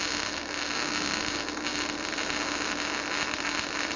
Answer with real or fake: real